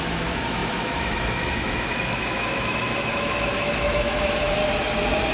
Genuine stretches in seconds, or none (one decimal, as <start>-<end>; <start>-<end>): 4.6-5.3